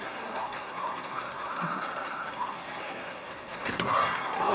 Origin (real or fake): fake